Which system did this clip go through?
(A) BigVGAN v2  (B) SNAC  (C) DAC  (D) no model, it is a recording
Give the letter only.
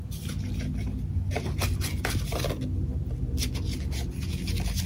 D